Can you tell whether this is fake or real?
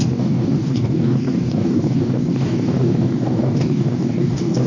fake